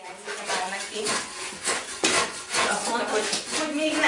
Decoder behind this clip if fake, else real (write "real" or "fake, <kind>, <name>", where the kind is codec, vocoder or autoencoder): fake, vocoder, Vocos